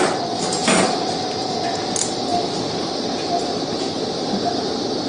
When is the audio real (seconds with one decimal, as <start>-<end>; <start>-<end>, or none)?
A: 0.0-0.6; 1.2-2.3; 2.9-3.4; 4.5-5.1